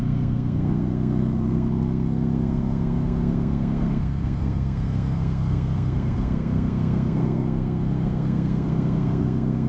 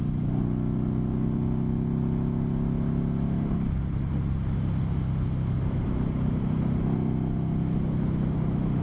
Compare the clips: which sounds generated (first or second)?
first